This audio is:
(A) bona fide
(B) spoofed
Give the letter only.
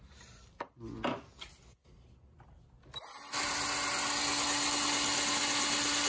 A